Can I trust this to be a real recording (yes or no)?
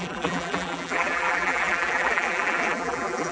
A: no